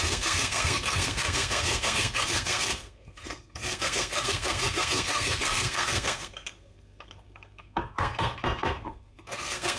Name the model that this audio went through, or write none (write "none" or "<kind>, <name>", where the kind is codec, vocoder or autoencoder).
codec, SNAC